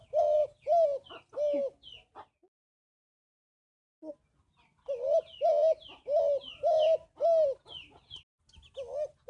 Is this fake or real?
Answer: real